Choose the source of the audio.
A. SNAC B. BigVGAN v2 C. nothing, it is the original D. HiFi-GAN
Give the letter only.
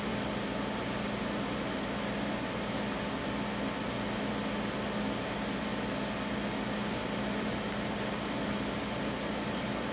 C